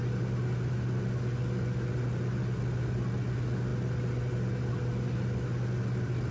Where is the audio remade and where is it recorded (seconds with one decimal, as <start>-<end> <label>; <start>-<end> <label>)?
0.0-6.3 recorded